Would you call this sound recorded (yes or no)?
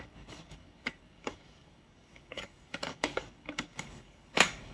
no